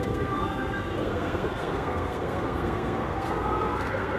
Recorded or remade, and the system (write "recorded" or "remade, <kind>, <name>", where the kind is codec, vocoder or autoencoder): remade, codec, SNAC